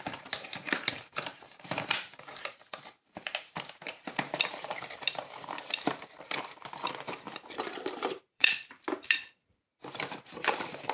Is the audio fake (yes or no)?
yes